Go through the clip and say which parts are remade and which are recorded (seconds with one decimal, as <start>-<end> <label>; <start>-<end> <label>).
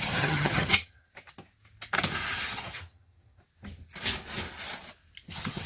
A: 0.0-1.1 remade; 1.1-2.3 recorded; 2.3-3.4 remade; 3.4-5.3 recorded; 5.3-5.7 remade